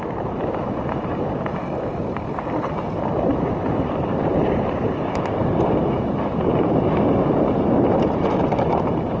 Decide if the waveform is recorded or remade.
remade